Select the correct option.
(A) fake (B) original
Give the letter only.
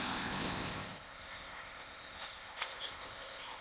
A